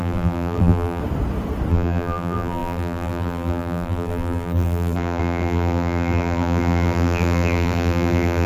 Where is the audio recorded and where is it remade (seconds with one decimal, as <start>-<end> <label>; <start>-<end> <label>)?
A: 0.0-1.0 remade; 1.0-1.7 recorded; 1.7-8.5 remade